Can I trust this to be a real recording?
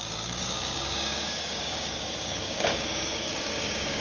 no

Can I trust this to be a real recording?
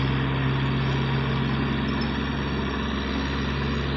yes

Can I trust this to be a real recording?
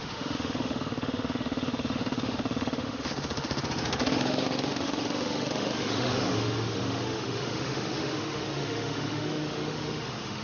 no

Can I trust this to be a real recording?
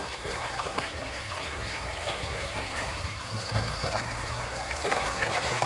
no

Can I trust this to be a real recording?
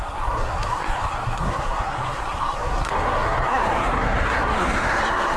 no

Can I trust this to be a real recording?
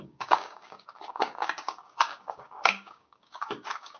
no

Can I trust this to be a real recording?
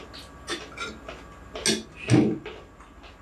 yes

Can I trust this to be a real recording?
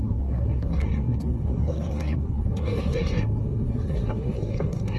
no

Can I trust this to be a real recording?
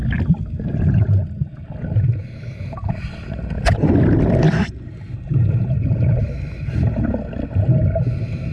yes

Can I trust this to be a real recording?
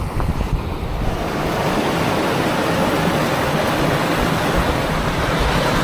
yes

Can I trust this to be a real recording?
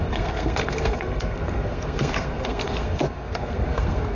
no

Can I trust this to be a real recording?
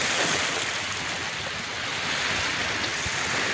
yes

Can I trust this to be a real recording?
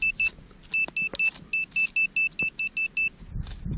yes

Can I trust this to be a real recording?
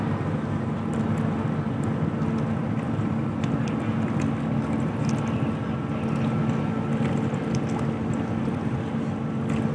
yes